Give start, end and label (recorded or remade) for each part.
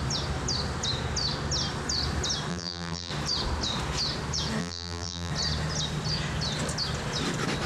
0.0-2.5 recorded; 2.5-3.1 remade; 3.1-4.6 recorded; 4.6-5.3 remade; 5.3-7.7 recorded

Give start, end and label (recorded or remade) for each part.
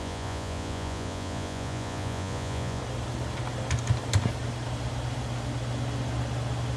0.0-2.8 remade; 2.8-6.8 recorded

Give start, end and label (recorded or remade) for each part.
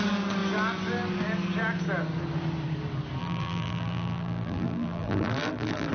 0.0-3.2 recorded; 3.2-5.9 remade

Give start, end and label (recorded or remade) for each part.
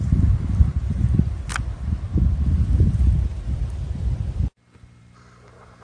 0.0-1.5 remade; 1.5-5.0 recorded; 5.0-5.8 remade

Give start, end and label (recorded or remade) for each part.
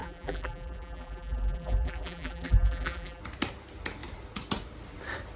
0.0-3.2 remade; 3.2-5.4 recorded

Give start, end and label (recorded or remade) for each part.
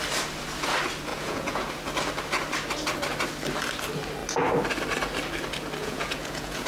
0.0-1.1 recorded; 1.1-1.7 remade; 1.7-5.8 recorded; 5.8-6.7 remade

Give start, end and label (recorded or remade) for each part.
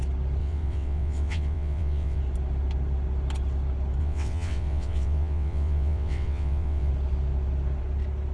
0.0-0.4 recorded; 0.4-2.2 remade; 2.2-4.0 recorded; 4.0-6.9 remade; 6.9-8.3 recorded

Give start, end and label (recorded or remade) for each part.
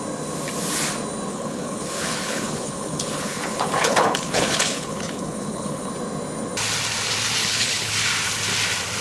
0.0-1.3 recorded; 1.3-5.9 remade; 5.9-7.4 recorded; 7.4-7.9 remade; 7.9-9.0 recorded